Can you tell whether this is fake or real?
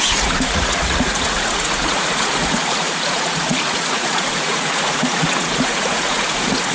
fake